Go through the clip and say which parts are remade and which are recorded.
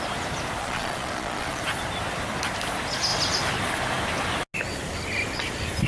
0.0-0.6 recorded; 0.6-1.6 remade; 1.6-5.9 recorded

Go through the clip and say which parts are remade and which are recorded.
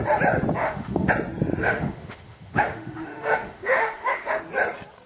0.0-0.6 recorded; 0.6-1.1 remade; 1.1-1.6 recorded; 1.6-4.4 remade; 4.4-5.1 recorded